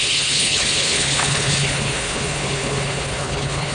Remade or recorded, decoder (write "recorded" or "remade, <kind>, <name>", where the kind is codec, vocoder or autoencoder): remade, codec, HILCodec